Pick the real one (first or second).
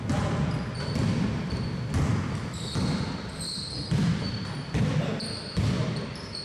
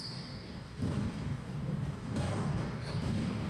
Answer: first